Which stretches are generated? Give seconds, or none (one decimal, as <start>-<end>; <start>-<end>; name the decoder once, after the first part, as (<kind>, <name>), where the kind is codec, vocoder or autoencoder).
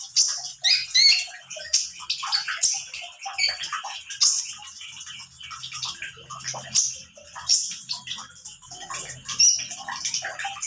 0.8-1.8 (vocoder, BigVGAN v2)